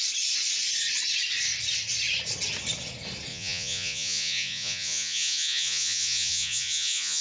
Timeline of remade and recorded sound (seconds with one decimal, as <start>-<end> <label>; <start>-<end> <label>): 0.0-3.3 recorded; 3.3-7.2 remade